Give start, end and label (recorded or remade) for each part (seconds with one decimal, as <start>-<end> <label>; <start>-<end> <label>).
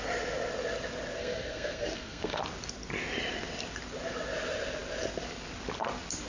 0.0-1.2 recorded; 1.2-2.4 remade; 2.4-6.3 recorded